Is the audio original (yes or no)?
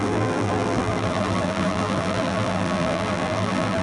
no